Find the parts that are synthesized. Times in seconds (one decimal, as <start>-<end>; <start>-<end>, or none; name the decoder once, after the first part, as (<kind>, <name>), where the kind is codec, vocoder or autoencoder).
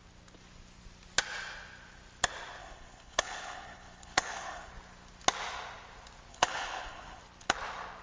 2.6-4.7 (codec, HILCodec); 6.3-7.2